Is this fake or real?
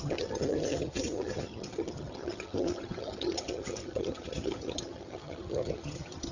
fake